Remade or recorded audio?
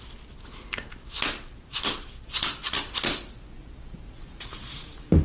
recorded